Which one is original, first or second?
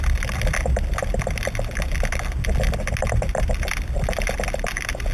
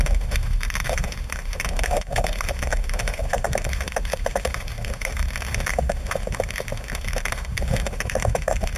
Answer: first